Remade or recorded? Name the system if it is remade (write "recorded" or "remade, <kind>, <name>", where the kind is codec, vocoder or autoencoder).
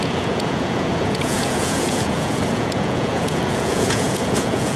remade, vocoder, Vocos